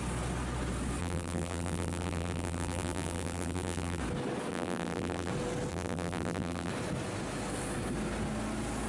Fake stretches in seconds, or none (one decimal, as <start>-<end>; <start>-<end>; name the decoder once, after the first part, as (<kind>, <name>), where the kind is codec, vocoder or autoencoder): 1.0-4.0 (vocoder, BigVGAN v2); 4.5-5.3; 5.7-6.7